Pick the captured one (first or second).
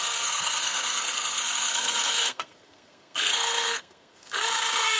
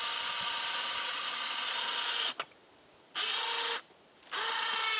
second